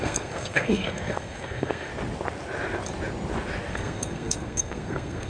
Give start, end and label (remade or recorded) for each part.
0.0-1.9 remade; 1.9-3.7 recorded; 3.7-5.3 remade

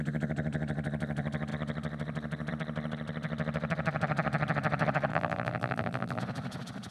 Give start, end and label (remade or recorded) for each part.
0.0-5.1 recorded; 5.1-6.2 remade; 6.2-6.9 recorded

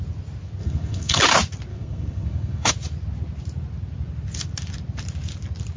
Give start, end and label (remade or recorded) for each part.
0.0-0.6 recorded; 0.6-1.2 remade; 1.2-1.7 recorded; 1.7-2.7 remade; 2.7-5.8 recorded

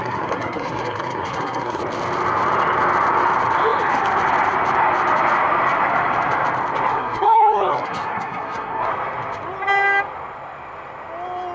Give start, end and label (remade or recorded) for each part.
0.0-1.8 remade; 1.8-6.9 recorded; 6.9-8.9 remade; 8.9-11.5 recorded